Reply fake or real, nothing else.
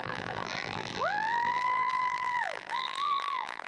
fake